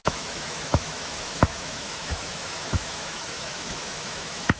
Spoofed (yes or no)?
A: yes